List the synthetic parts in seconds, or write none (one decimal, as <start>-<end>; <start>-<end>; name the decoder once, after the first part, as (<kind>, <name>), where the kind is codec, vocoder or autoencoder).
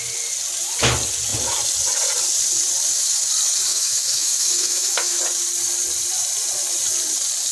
3.7-5.2 (autoencoder, DAC-VAE)